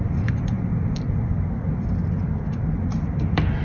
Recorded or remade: remade